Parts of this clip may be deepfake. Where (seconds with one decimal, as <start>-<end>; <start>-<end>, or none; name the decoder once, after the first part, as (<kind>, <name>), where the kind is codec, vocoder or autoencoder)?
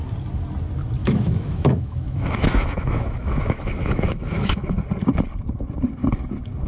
1.0-4.7 (autoencoder, DAC-VAE)